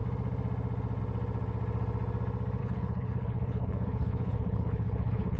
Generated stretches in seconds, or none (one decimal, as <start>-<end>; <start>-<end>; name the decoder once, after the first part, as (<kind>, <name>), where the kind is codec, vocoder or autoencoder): 2.6-5.4 (codec, HILCodec)